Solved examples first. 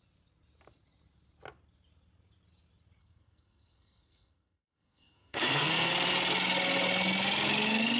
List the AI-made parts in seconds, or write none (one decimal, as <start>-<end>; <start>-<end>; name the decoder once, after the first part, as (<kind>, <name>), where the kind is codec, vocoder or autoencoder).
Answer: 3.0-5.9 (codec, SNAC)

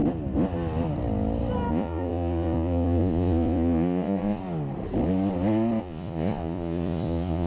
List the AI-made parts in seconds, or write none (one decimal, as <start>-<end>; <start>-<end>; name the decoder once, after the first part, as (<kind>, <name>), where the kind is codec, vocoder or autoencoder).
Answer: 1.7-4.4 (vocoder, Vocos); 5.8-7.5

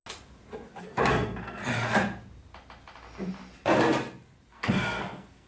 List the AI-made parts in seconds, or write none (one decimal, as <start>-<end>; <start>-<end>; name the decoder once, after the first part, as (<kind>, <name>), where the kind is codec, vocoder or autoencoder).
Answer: 0.8-1.6 (codec, SNAC); 4.5-5.5

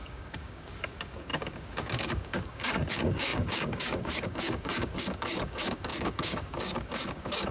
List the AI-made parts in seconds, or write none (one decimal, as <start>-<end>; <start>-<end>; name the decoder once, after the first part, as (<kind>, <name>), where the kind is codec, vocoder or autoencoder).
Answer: 0.0-7.5 (codec, DAC)